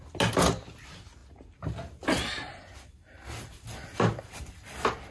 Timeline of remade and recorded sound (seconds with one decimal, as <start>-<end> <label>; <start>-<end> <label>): 0.0-5.1 recorded

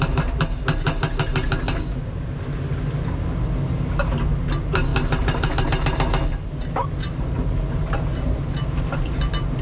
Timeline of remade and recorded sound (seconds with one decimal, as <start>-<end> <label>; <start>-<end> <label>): 0.0-8.1 recorded; 8.1-9.2 remade; 9.2-9.6 recorded

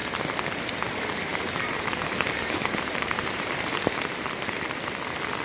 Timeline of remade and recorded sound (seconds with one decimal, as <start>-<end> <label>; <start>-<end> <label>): 0.0-1.3 recorded; 1.3-3.9 remade; 3.9-5.4 recorded

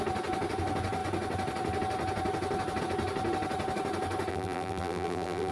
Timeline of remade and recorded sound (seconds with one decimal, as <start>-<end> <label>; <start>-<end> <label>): 0.0-4.3 recorded; 4.3-5.5 remade

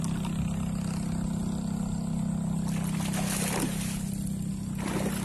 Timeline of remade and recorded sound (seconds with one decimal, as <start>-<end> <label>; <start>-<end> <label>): 0.0-5.2 recorded

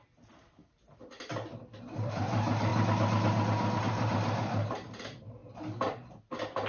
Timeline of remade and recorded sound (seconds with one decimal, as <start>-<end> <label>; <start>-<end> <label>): 0.0-0.6 remade; 0.6-1.8 recorded; 1.8-2.7 remade; 2.7-3.8 recorded; 3.8-5.4 remade; 5.4-6.7 recorded